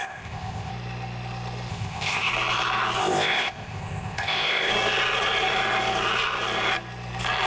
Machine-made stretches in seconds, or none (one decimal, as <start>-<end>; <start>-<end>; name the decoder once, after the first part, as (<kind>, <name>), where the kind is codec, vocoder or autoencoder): 0.0-0.7 (codec, ZipCodec); 1.7-2.3; 3.0-4.7